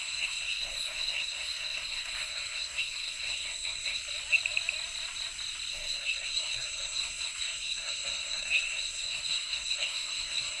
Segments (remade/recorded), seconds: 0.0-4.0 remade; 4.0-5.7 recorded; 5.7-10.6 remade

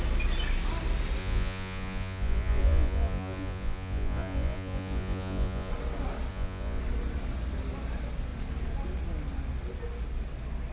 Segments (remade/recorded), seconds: 0.0-1.2 recorded; 1.2-5.7 remade; 5.7-6.3 recorded; 6.3-6.8 remade; 6.8-10.7 recorded

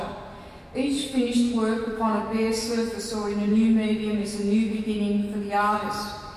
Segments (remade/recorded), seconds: 0.0-1.0 recorded; 1.0-3.0 remade; 3.0-3.5 recorded; 3.5-5.8 remade; 5.8-6.4 recorded

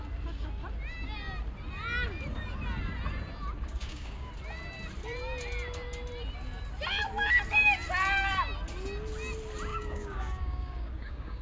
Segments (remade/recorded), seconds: 0.0-3.7 recorded; 3.7-4.3 remade; 4.3-9.7 recorded; 9.7-11.4 remade

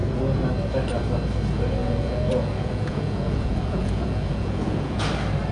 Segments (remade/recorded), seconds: 0.0-1.8 recorded; 1.8-5.1 remade; 5.1-5.5 recorded

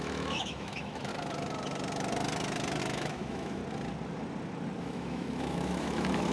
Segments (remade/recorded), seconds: 0.0-1.1 remade; 1.1-2.8 recorded; 2.8-3.6 remade; 3.6-4.8 recorded; 4.8-6.3 remade